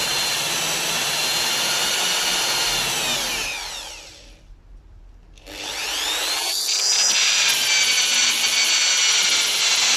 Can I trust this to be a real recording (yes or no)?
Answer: yes